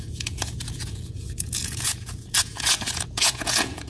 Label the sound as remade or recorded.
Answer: remade